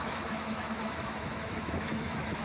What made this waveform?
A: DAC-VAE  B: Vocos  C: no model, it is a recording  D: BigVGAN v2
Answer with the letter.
A